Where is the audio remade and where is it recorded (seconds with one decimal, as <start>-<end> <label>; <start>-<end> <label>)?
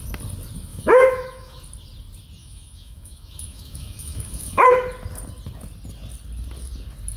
0.0-0.7 recorded; 0.7-1.6 remade; 1.6-2.4 recorded; 2.4-4.7 remade; 4.7-7.2 recorded